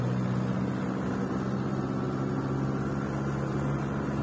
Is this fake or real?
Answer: real